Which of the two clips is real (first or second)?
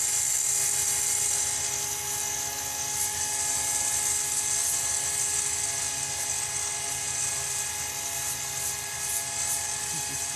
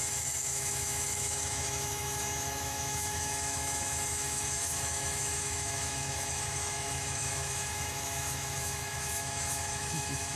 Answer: first